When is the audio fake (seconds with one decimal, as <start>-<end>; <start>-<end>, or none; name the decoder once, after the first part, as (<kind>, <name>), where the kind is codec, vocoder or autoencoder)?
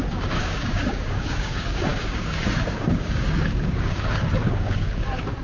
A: 0.0-5.4 (codec, DAC)